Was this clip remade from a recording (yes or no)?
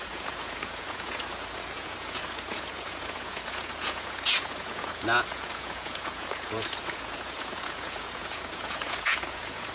yes